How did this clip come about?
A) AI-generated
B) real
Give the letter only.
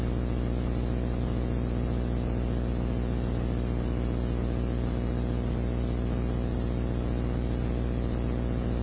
B